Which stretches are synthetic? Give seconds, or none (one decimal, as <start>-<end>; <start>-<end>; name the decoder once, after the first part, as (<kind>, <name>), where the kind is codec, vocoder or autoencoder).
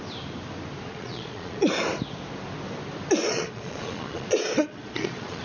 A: 0.9-1.7 (vocoder, Vocos); 3.2-5.4